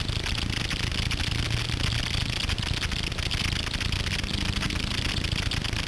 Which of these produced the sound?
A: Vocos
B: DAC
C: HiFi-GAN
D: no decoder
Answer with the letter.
D